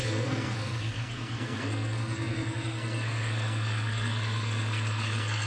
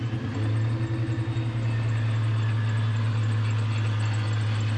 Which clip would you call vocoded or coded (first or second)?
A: first